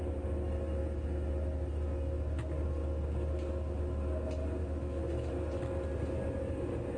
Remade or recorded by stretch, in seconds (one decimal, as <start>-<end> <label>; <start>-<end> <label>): 0.0-4.6 recorded; 4.6-5.3 remade; 5.3-7.0 recorded